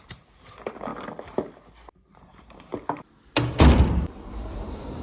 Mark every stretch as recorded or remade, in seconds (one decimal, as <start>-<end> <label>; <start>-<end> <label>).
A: 0.0-0.9 remade; 0.9-2.1 recorded; 2.1-2.7 remade; 2.7-3.9 recorded; 3.9-5.0 remade